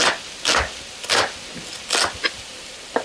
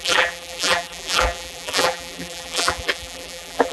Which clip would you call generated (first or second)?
second